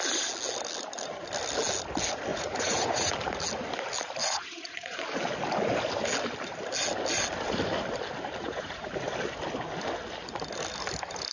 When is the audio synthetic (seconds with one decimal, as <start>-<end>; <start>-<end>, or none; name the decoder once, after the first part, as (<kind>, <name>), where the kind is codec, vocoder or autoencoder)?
2.3-3.1 (vocoder, Vocos); 4.2-5.0; 8.4-8.9